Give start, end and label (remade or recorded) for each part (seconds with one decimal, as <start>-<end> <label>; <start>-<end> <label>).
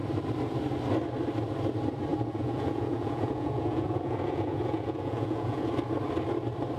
0.0-2.1 recorded; 2.1-5.7 remade; 5.7-6.8 recorded